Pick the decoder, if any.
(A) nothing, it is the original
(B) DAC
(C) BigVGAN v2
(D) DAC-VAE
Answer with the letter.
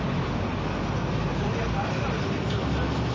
A